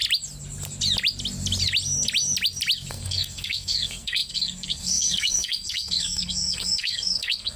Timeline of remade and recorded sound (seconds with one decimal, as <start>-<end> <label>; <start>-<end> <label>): 0.0-2.9 recorded; 2.9-7.6 remade